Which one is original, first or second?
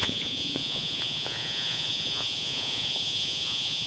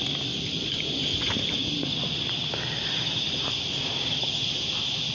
second